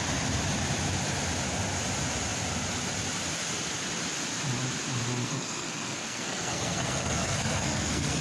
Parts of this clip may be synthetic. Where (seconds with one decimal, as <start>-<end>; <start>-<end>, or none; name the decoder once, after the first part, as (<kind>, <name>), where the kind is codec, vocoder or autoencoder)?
5.2-8.2 (codec, SNAC)